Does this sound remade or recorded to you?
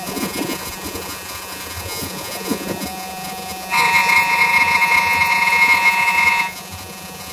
remade